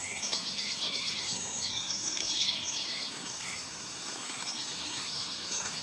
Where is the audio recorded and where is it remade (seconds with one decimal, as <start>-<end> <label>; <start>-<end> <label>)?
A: 0.0-5.8 remade